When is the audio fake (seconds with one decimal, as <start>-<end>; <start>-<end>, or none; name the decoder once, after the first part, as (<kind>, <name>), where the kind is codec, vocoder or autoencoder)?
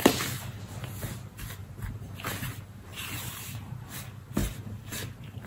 1.6-2.2 (vocoder, BigVGAN v2); 2.9-4.0; 4.4-5.5